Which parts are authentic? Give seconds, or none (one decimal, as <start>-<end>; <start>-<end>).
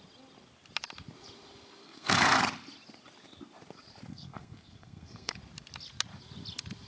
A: 0.0-1.8; 2.4-4.1; 5.4-6.9